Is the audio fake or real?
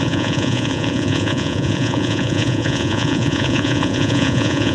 fake